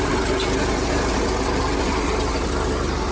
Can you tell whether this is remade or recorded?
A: recorded